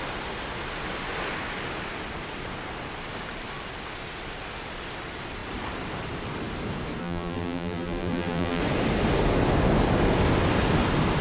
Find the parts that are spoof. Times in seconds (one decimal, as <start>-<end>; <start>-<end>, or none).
7.0-8.6